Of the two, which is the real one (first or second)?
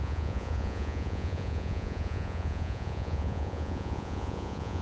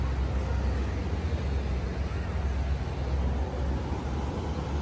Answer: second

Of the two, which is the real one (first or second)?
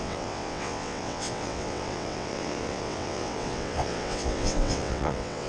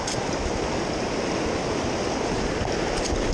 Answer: second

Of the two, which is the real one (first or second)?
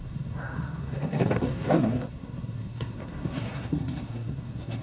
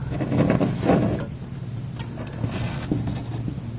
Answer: second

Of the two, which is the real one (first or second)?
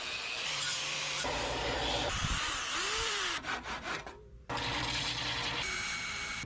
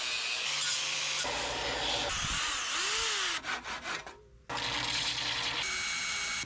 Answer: second